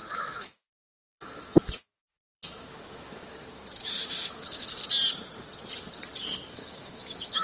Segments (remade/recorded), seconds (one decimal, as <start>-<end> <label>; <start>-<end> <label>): 0.0-4.8 remade; 4.8-6.5 recorded; 6.5-7.4 remade